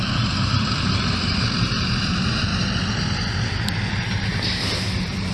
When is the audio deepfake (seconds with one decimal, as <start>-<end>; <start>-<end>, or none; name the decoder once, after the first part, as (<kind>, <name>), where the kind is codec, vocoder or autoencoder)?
0.0-2.5 (vocoder, BigVGAN v2); 3.9-5.3